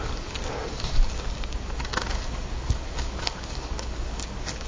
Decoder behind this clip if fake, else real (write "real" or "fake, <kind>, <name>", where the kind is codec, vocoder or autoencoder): fake, codec, DAC